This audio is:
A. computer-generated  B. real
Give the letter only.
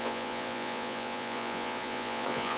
A